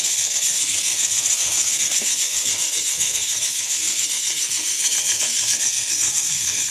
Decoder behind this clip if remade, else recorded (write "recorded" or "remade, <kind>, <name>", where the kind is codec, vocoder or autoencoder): remade, codec, SNAC